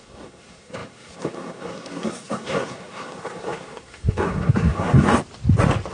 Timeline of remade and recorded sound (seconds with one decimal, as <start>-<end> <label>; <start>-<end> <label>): 0.0-5.1 remade; 5.1-5.9 recorded